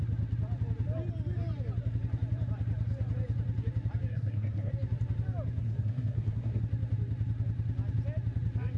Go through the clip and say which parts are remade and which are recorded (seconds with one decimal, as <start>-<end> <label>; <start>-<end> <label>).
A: 0.0-4.1 recorded; 4.1-4.7 remade; 4.7-5.6 recorded; 5.6-6.6 remade; 6.6-8.8 recorded

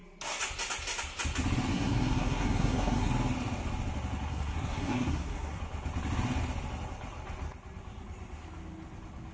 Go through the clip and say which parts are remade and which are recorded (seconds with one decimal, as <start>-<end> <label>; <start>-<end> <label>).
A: 0.0-1.7 recorded; 1.7-3.1 remade; 3.1-4.3 recorded; 4.3-5.6 remade; 5.6-9.3 recorded

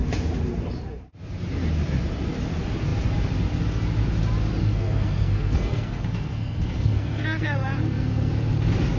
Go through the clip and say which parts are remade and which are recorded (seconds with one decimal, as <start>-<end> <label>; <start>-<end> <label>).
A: 0.0-4.6 recorded; 4.6-8.3 remade; 8.3-9.0 recorded

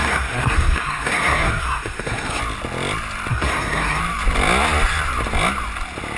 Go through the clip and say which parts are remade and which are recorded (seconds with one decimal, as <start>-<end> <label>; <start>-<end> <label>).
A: 0.0-2.4 remade; 2.4-3.3 recorded; 3.3-4.0 remade; 4.0-6.2 recorded

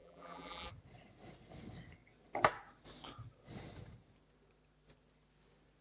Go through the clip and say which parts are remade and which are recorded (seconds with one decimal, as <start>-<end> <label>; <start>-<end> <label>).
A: 0.0-0.7 remade; 0.7-5.8 recorded

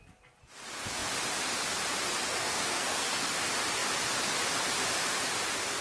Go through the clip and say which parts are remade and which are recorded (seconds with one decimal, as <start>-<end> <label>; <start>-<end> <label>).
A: 0.0-2.3 recorded; 2.3-3.4 remade; 3.4-5.8 recorded